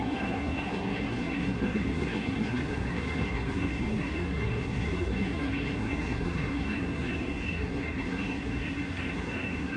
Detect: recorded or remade remade